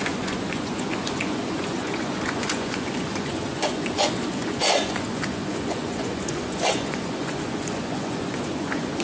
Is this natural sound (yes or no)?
no